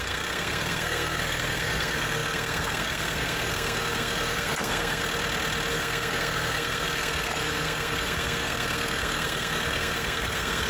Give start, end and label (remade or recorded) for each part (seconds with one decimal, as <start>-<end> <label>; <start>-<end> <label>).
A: 0.0-5.0 remade; 5.0-5.7 recorded; 5.7-10.7 remade